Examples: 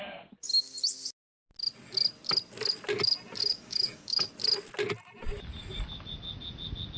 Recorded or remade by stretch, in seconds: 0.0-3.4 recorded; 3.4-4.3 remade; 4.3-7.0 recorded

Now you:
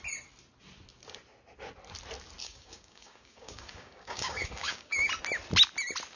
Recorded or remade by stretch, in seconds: 0.0-2.4 recorded; 2.4-5.1 remade; 5.1-6.2 recorded

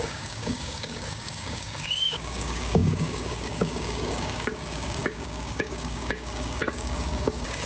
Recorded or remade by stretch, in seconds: 0.0-7.7 remade

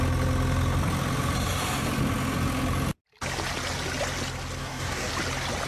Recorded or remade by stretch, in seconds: 0.0-4.6 recorded; 4.6-5.1 remade; 5.1-5.7 recorded

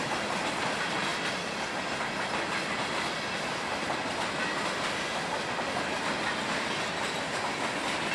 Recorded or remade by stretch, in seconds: 0.0-8.1 recorded

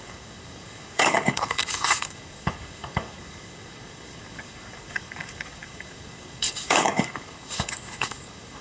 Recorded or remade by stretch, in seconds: 0.0-8.6 remade